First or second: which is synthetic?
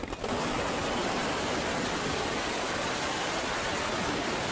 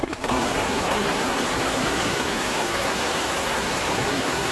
second